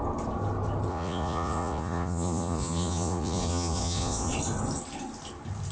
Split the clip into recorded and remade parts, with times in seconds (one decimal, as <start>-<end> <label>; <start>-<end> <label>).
0.0-0.9 recorded; 0.9-4.3 remade; 4.3-5.7 recorded